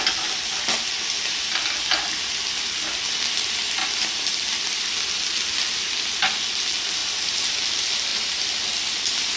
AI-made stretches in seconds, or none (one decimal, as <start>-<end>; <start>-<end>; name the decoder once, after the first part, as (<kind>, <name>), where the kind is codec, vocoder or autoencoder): 3.8-4.3 (vocoder, BigVGAN v2)